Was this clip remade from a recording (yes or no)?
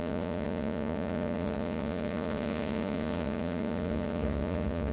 yes